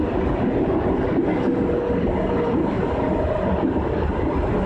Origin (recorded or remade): recorded